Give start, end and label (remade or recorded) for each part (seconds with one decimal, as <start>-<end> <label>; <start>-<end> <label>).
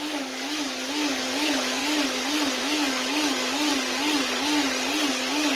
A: 0.0-1.8 remade; 1.8-2.6 recorded; 2.6-3.7 remade; 3.7-5.1 recorded; 5.1-5.6 remade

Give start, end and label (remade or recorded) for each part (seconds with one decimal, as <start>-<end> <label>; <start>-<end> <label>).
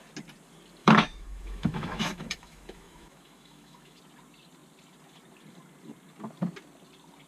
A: 0.0-0.8 recorded; 0.8-4.0 remade; 4.0-7.3 recorded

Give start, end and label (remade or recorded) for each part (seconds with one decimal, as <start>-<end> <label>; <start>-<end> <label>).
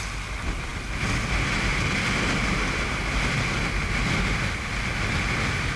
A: 0.0-5.8 recorded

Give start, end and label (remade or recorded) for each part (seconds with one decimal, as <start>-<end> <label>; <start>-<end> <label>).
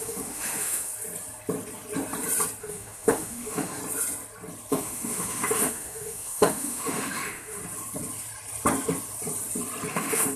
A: 0.0-0.9 remade; 0.9-2.6 recorded; 2.6-3.8 remade; 3.8-4.7 recorded; 4.7-7.6 remade; 7.6-9.9 recorded; 9.9-10.4 remade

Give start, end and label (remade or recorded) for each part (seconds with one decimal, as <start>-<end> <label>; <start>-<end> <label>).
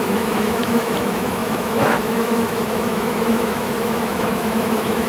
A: 0.0-5.1 remade